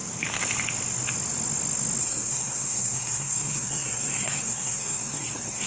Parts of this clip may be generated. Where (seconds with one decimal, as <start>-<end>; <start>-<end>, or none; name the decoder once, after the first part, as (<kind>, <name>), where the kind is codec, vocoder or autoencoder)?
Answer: 2.0-5.7 (codec, SNAC)